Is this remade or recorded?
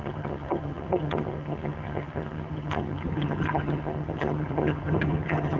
remade